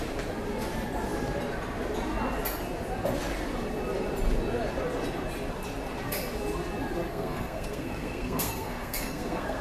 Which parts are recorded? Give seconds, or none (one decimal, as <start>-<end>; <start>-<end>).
0.0-7.1